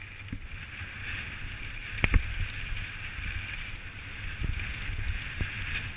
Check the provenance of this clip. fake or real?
real